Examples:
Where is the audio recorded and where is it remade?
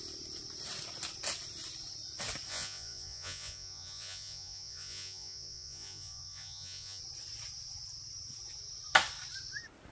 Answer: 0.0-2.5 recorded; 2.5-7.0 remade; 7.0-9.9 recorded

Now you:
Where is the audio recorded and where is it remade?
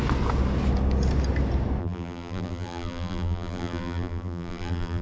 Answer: 0.0-1.8 recorded; 1.8-5.0 remade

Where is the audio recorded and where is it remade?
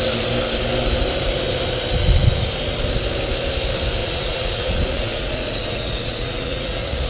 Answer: 0.0-4.0 recorded; 4.0-7.1 remade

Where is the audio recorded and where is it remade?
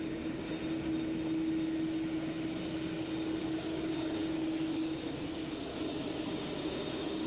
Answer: 0.0-0.5 remade; 0.5-3.4 recorded; 3.4-5.7 remade; 5.7-6.3 recorded; 6.3-7.3 remade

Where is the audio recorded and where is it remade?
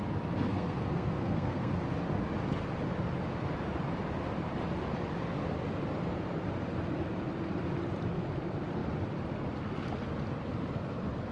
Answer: 0.0-0.5 recorded; 0.5-1.7 remade; 1.7-11.3 recorded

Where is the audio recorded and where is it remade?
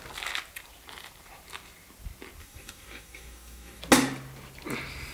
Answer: 0.0-2.4 recorded; 2.4-3.8 remade; 3.8-5.1 recorded